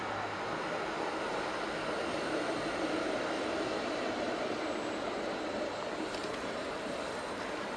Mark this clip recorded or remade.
recorded